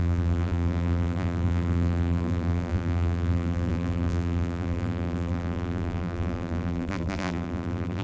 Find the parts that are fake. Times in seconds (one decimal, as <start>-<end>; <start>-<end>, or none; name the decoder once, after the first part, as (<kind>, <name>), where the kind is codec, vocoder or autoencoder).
0.0-8.0 (vocoder, BigVGAN v2)